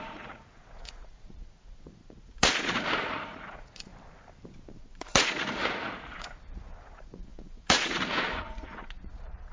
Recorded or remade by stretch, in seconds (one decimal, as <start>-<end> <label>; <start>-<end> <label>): 0.0-3.9 remade; 3.9-4.8 recorded; 4.8-9.5 remade